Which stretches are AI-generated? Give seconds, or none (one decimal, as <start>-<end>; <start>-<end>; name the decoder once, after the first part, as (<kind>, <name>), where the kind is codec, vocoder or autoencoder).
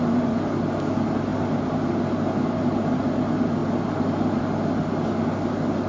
none